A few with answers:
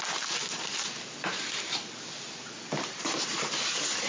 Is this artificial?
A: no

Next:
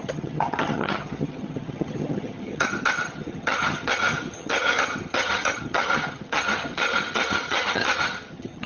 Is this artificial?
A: yes